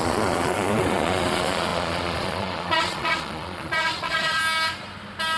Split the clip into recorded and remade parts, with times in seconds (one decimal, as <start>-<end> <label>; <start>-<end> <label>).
0.0-4.4 remade; 4.4-5.4 recorded

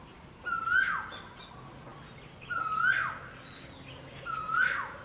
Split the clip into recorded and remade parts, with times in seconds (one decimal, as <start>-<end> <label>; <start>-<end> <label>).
0.0-5.0 recorded

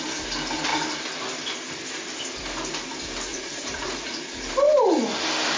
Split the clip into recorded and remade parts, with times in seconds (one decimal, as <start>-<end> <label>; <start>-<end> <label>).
0.0-3.3 recorded; 3.3-4.5 remade; 4.5-5.6 recorded

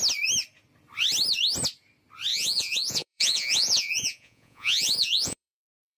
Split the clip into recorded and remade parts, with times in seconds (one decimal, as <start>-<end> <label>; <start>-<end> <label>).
0.0-2.3 recorded; 2.3-6.0 remade

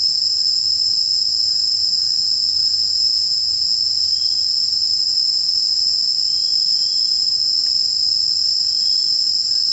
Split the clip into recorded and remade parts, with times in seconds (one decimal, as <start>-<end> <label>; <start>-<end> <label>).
0.0-1.3 recorded; 1.3-1.9 remade; 1.9-2.6 recorded; 2.6-3.8 remade; 3.8-9.7 recorded

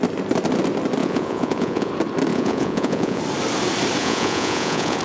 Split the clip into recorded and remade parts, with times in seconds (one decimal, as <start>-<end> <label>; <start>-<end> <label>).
0.0-1.0 recorded; 1.0-1.9 remade; 1.9-2.3 recorded; 2.3-3.2 remade; 3.2-4.0 recorded; 4.0-5.0 remade

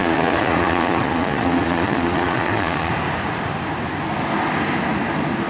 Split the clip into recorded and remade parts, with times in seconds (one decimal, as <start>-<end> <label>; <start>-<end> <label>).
0.0-2.9 remade; 2.9-5.5 recorded

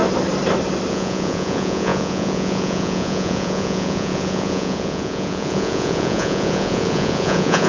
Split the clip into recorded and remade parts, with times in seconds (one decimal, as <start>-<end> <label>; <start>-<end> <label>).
0.0-0.9 recorded; 0.9-7.7 remade